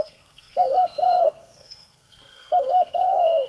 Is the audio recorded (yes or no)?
no